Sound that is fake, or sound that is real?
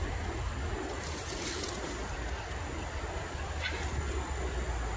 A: real